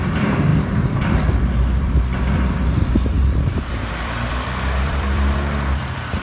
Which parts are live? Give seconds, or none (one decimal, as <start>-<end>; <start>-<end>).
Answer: none